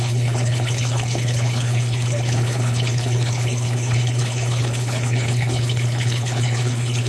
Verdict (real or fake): fake